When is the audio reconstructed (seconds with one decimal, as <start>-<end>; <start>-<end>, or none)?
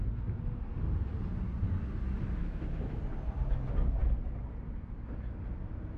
2.4-3.0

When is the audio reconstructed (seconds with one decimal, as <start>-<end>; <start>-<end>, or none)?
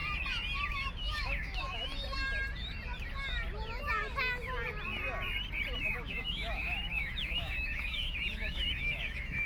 0.7-1.9; 5.8-9.5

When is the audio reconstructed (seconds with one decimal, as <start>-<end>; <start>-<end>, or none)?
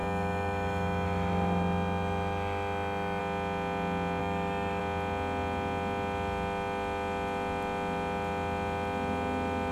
0.0-3.2; 4.2-4.8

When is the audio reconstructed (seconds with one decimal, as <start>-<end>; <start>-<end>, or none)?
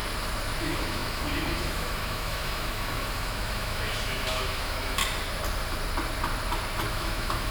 0.6-5.0; 6.9-7.5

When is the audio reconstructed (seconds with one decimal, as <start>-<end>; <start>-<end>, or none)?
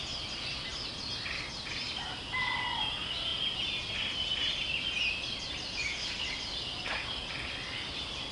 none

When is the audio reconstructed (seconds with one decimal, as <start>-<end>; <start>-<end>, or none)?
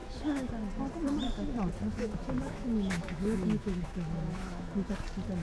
0.0-0.5; 1.9-4.9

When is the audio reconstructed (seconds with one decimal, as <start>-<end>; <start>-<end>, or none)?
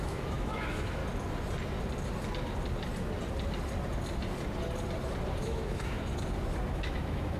0.0-1.0; 5.4-6.1; 6.7-7.4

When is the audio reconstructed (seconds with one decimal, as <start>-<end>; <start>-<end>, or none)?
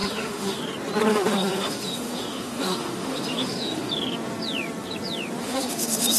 0.0-0.6; 1.1-3.9; 5.4-6.2